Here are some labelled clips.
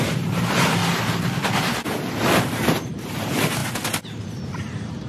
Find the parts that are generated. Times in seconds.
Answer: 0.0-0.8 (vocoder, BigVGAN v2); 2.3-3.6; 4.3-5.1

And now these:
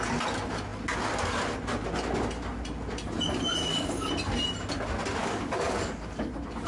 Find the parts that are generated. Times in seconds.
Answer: 3.6-4.1 (codec, DAC); 5.2-6.3

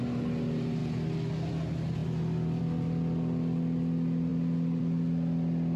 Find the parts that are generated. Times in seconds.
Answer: none

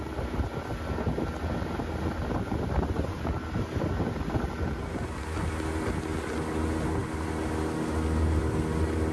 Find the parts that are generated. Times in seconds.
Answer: none

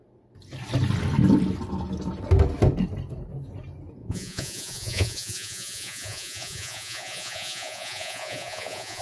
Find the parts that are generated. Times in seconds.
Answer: 4.0-9.0 (vocoder, Vocos)

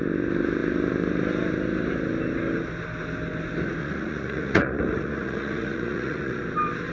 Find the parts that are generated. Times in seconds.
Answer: 3.8-6.4 (vocoder, Vocos)

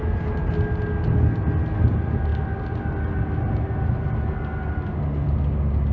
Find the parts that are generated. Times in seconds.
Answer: none

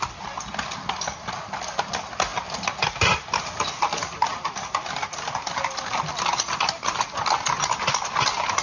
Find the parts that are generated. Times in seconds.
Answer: none